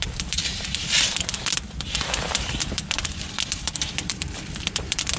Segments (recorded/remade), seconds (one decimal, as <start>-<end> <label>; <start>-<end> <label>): 0.0-5.2 remade